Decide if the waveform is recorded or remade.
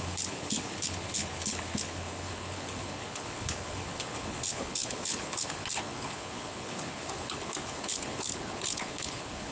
remade